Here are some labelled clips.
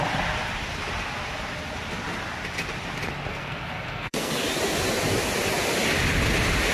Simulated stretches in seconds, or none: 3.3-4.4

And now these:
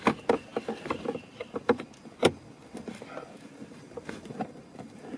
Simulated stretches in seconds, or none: none